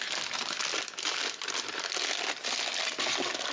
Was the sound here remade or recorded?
recorded